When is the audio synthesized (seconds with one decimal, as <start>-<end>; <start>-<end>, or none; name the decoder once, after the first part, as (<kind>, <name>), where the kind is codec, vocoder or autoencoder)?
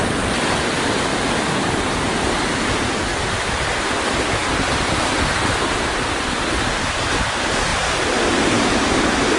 7.7-9.0 (vocoder, BigVGAN v2)